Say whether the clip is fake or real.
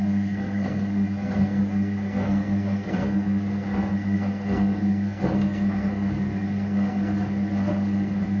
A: fake